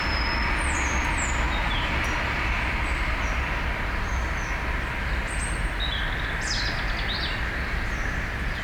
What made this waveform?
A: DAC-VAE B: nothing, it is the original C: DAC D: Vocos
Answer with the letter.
B